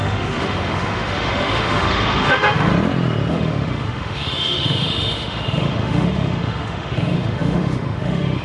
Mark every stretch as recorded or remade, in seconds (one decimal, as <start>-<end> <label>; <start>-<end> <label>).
0.0-2.7 remade; 2.7-3.3 recorded; 3.3-8.4 remade